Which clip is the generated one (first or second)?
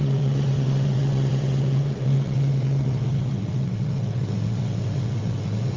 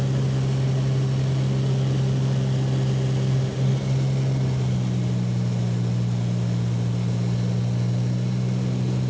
first